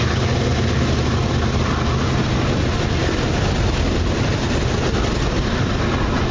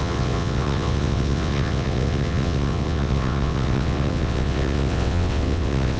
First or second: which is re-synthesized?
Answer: second